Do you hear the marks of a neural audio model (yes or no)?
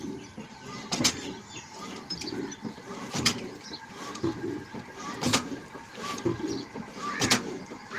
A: yes